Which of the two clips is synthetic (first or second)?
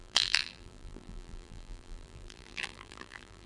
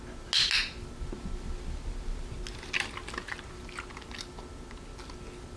first